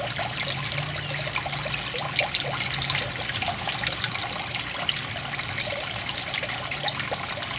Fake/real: real